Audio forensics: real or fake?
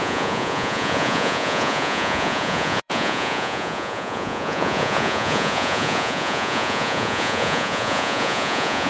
fake